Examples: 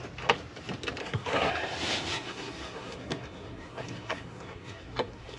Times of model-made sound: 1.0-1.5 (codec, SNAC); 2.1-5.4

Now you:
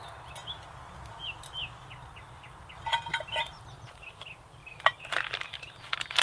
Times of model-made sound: none

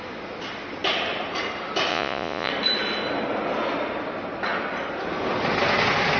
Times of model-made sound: 1.9-2.5 (vocoder, Vocos)

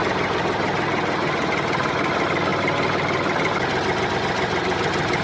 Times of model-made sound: 0.0-5.2 (vocoder, BigVGAN v2)

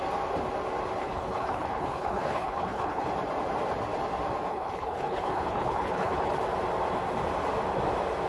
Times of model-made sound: 1.0-3.1 (codec, HILCodec); 4.5-6.4

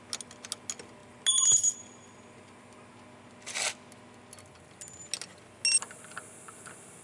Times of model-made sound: none

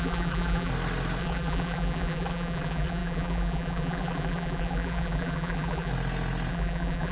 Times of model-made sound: 0.0-0.7 (vocoder, BigVGAN v2); 1.2-5.9; 6.5-7.1